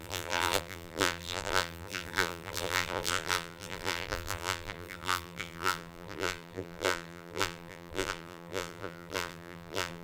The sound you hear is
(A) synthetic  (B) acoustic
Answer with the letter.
A